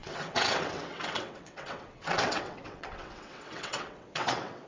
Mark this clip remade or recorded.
remade